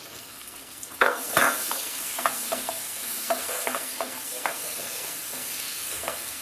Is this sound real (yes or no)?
no